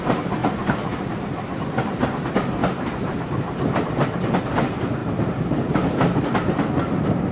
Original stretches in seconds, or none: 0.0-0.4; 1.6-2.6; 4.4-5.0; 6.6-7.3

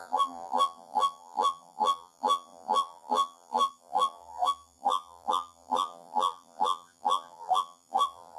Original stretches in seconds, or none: none

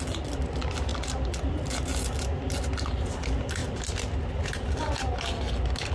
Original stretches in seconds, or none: 0.0-5.9

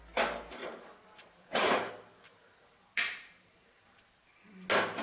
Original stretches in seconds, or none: 0.0-0.6; 1.9-2.3; 4.0-5.0

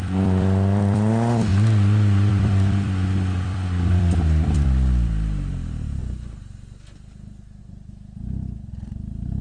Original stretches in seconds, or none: 1.5-2.3; 6.0-7.6

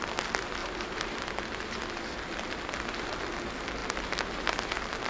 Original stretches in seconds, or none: 0.0-0.6; 1.3-5.1

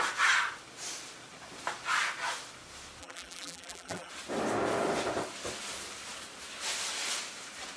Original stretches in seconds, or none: 0.0-3.0; 4.1-7.8